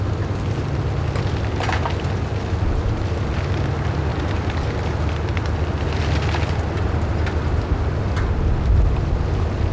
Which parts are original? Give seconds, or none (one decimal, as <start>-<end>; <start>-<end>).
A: 0.0-9.7